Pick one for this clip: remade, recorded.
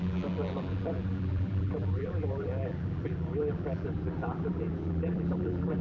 remade